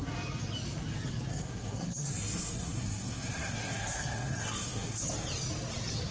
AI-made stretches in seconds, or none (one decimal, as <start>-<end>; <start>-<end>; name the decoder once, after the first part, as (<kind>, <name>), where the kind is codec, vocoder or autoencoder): 1.3-5.0 (codec, SNAC)

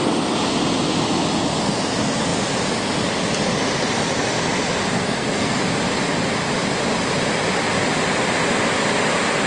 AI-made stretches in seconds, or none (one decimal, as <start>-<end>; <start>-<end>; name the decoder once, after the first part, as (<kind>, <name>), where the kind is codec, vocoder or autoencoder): 4.9-5.6 (codec, SNAC)

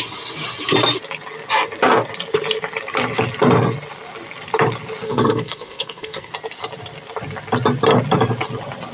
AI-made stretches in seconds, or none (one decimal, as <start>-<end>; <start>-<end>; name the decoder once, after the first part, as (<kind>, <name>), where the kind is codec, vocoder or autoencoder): 5.0-6.3 (codec, SNAC)

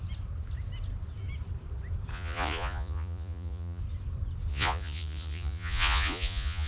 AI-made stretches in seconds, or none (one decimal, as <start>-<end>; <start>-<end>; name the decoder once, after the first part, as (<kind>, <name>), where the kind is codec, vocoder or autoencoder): 2.1-3.8 (vocoder, Vocos); 4.5-6.7

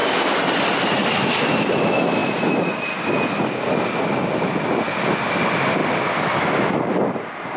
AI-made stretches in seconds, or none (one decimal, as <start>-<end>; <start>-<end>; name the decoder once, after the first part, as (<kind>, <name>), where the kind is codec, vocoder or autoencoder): none

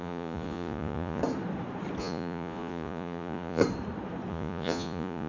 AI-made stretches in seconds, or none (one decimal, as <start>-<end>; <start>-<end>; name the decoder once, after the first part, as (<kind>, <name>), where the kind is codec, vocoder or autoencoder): 0.0-1.2 (vocoder, Vocos); 2.0-3.6; 4.3-5.3